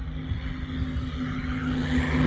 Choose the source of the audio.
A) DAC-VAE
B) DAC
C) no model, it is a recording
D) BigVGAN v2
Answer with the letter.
C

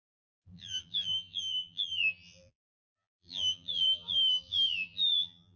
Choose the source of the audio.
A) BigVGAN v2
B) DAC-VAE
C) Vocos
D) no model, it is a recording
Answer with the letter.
A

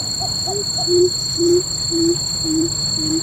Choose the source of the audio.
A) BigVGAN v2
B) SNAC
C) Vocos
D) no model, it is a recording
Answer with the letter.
A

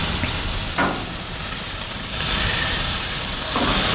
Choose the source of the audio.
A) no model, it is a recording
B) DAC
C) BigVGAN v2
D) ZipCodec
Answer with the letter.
A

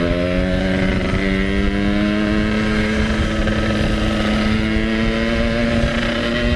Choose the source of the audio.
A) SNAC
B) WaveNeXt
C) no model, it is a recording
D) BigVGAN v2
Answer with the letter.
C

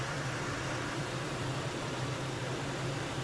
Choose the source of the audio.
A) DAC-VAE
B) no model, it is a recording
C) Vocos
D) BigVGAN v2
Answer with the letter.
D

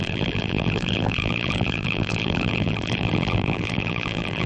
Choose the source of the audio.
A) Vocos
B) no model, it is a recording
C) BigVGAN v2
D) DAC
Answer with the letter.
C